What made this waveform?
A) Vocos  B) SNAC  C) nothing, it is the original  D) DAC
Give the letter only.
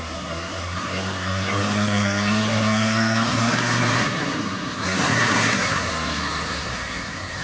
B